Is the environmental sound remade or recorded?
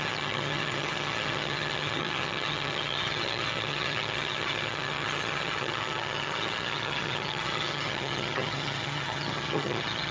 remade